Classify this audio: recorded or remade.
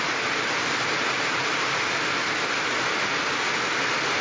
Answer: recorded